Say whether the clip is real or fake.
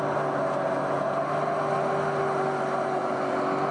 real